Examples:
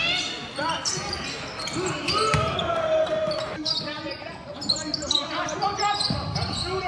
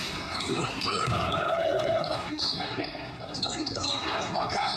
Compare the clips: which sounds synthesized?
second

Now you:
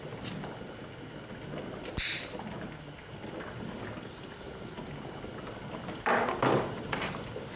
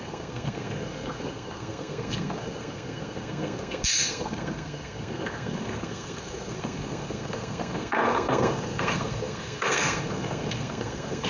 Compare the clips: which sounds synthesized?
second